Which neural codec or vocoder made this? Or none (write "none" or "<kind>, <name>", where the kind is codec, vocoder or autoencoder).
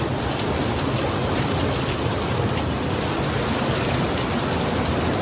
none